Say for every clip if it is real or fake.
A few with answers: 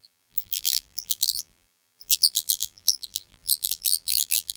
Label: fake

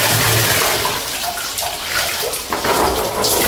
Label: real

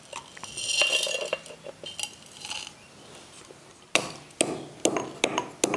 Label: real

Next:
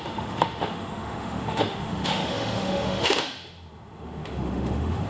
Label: fake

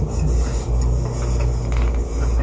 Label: real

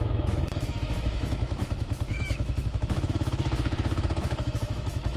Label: fake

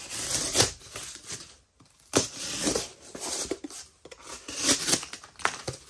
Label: real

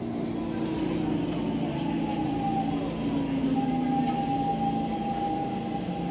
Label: real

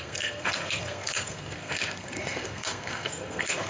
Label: fake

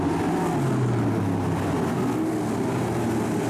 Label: real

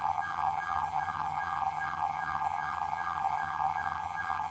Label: fake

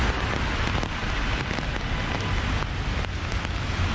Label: real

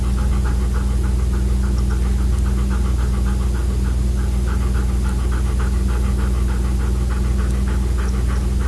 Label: real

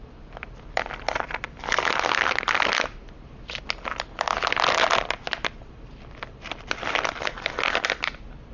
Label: real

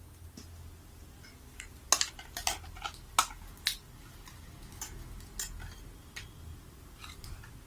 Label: real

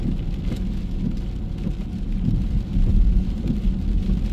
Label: real